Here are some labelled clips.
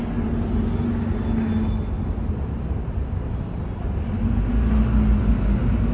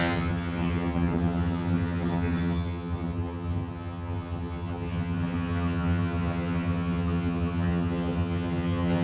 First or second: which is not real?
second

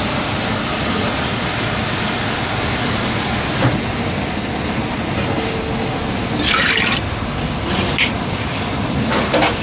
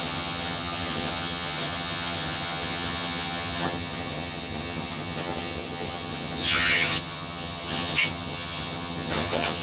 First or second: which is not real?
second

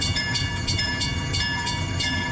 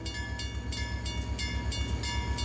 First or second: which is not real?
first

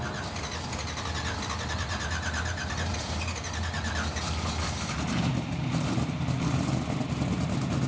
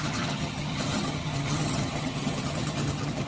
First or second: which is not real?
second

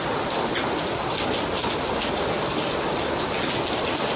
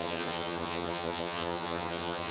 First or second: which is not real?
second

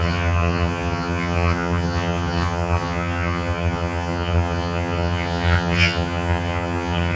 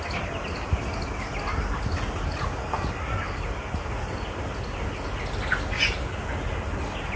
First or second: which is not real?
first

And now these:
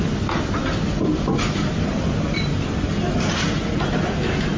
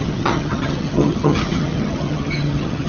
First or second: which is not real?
second